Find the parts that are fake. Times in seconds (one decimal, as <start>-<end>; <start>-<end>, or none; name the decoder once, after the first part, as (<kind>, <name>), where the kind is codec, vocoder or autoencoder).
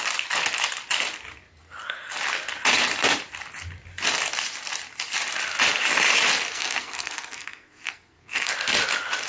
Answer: 6.5-8.5 (codec, SNAC)